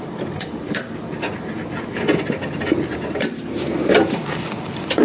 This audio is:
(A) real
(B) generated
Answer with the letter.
A